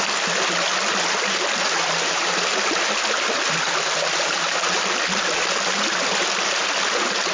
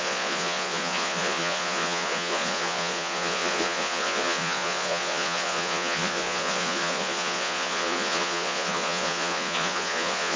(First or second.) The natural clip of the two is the first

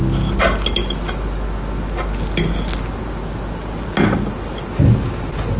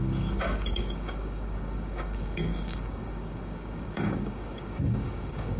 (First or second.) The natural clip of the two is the first